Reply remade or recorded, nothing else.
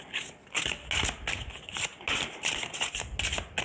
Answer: recorded